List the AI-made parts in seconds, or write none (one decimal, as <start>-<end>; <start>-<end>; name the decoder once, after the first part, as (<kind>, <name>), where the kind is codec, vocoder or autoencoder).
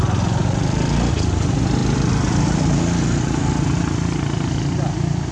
none